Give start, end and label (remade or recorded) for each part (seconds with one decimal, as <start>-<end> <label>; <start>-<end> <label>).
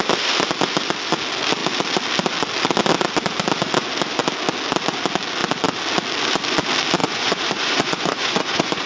0.0-7.0 recorded; 7.0-8.9 remade